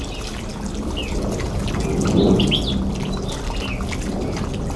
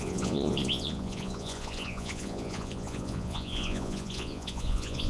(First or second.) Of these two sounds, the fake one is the second